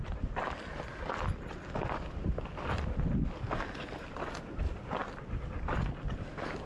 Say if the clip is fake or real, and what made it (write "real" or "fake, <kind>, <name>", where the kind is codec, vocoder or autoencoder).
real